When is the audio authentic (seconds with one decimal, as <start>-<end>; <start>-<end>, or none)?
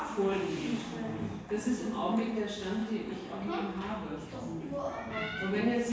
0.0-5.9